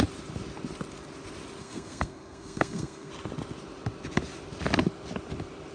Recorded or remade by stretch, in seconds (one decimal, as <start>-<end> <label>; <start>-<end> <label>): 0.0-1.6 recorded; 1.6-3.1 remade; 3.1-5.7 recorded